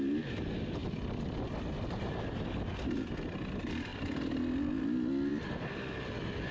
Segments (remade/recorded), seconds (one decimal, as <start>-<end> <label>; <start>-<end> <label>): 0.0-6.5 recorded